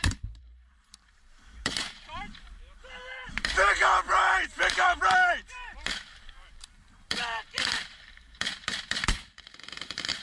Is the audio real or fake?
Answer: fake